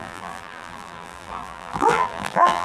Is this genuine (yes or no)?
no